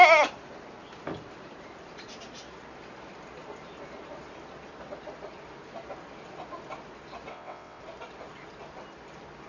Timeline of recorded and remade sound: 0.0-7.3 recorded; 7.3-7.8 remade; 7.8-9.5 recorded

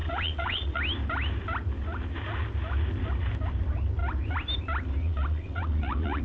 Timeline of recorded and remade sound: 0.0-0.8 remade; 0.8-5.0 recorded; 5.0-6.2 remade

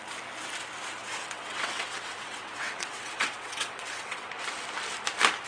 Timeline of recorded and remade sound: 0.0-1.0 recorded; 1.0-4.3 remade; 4.3-5.5 recorded

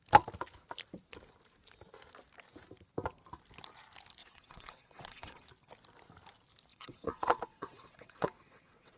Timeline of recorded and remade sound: 0.0-4.2 recorded; 4.2-5.4 remade; 5.4-6.7 recorded; 6.7-9.0 remade